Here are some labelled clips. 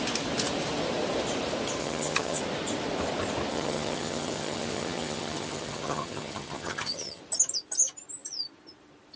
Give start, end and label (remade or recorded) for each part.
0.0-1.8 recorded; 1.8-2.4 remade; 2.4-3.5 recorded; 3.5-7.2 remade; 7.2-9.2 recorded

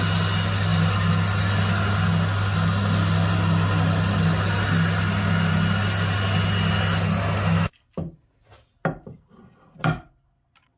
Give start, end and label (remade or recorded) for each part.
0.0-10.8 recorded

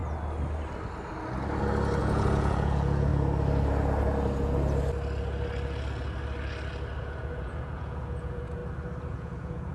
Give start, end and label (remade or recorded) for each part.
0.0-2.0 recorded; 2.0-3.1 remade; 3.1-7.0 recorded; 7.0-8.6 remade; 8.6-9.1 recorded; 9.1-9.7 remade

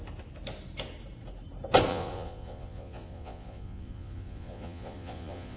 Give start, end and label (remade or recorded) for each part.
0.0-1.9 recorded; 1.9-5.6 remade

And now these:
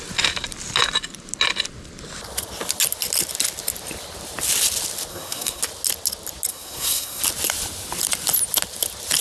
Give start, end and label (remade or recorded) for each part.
0.0-5.1 recorded; 5.1-5.6 remade; 5.6-6.5 recorded; 6.5-7.2 remade; 7.2-9.2 recorded